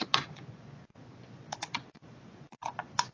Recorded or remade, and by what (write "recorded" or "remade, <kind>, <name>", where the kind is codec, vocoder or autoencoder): remade, vocoder, Vocos